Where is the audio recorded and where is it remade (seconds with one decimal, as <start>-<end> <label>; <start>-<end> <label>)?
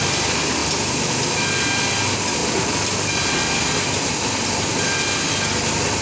0.0-6.0 recorded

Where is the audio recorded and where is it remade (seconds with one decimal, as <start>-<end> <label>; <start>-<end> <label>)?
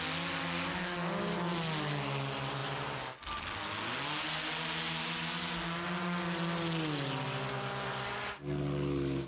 0.0-9.3 recorded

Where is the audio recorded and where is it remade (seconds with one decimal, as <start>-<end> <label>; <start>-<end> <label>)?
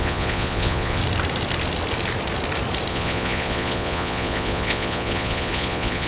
0.0-1.0 remade; 1.0-2.9 recorded; 2.9-6.1 remade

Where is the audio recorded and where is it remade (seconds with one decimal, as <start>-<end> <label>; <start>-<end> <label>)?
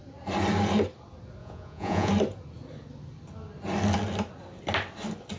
0.0-1.4 recorded; 1.4-2.1 remade; 2.1-5.4 recorded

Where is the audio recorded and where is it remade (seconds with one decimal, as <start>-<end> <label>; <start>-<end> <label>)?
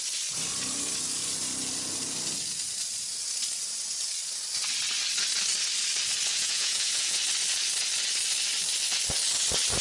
0.0-6.3 recorded; 6.3-7.2 remade; 7.2-9.8 recorded